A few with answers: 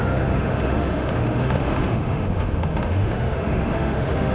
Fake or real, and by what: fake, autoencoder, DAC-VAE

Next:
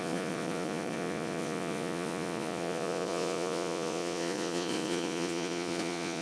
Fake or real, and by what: fake, vocoder, Vocos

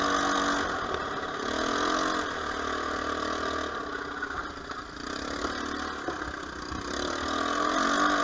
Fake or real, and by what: real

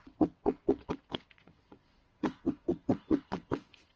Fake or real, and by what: fake, vocoder, WaveNeXt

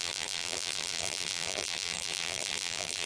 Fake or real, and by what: fake, vocoder, BigVGAN v2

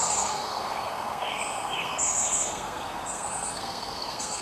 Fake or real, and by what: fake, codec, SNAC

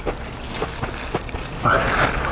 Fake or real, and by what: real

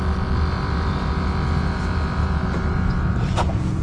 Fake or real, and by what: fake, vocoder, Vocos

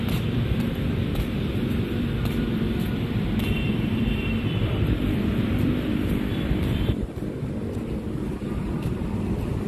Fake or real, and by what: fake, vocoder, BigVGAN v2